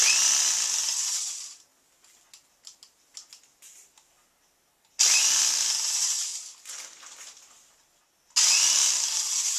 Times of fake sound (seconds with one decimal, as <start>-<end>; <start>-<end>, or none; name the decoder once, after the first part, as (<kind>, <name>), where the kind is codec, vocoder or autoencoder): none